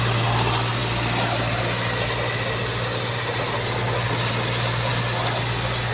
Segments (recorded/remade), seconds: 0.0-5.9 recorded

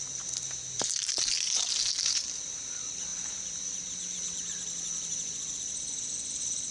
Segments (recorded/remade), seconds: 0.0-6.7 recorded

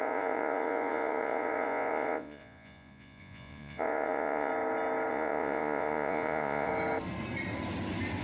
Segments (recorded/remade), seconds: 0.0-4.5 remade; 4.5-5.1 recorded; 5.1-6.7 remade; 6.7-8.2 recorded

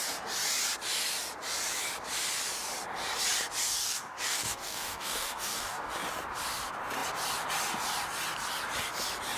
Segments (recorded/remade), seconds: 0.0-3.8 recorded; 3.8-5.9 remade; 5.9-9.4 recorded

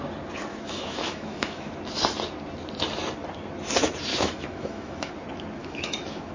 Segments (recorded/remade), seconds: 0.0-0.5 recorded; 0.5-1.7 remade; 1.7-4.1 recorded; 4.1-5.1 remade; 5.1-5.6 recorded; 5.6-6.3 remade

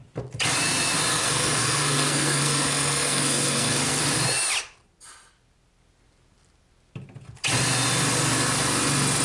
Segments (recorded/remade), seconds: 0.0-1.1 recorded; 1.1-4.0 remade; 4.0-9.2 recorded